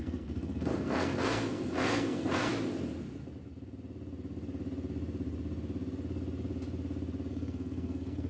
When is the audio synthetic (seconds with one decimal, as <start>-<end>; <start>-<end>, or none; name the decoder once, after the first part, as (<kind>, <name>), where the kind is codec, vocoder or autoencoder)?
0.0-2.5 (codec, SNAC); 7.3-8.3